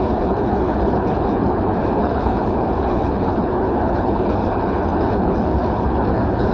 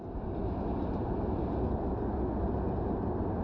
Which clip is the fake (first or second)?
first